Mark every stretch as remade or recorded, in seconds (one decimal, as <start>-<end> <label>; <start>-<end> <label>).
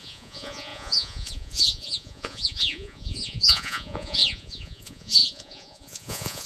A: 0.0-6.5 remade